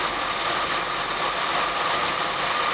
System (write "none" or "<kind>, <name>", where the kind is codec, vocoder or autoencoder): none